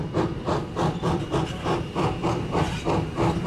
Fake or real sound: fake